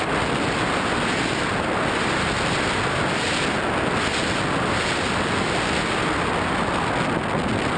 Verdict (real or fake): real